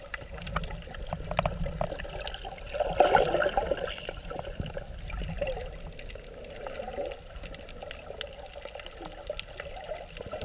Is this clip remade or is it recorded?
recorded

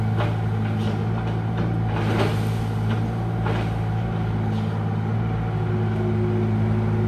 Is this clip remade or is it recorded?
recorded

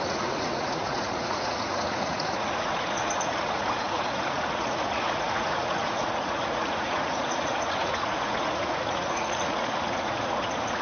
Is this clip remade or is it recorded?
remade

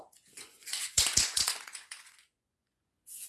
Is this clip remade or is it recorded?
remade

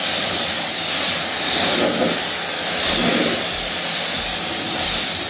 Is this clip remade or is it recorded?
recorded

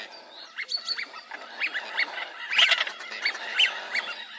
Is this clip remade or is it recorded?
recorded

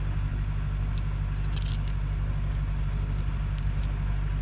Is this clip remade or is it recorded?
recorded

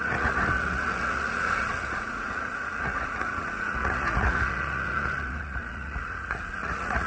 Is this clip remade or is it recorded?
remade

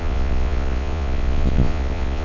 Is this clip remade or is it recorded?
remade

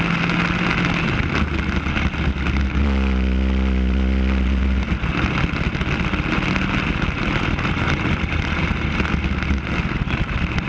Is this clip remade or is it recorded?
recorded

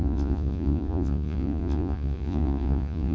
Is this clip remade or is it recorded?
remade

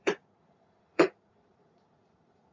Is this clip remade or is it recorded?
remade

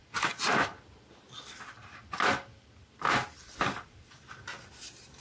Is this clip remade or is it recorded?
recorded